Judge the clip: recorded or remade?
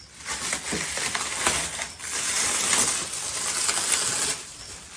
recorded